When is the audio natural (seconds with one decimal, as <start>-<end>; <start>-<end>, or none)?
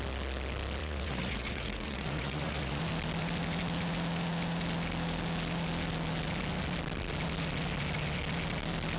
0.0-0.8; 2.8-9.0